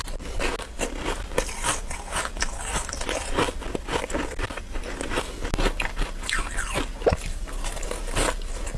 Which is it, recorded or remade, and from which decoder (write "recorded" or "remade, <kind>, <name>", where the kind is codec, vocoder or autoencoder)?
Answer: recorded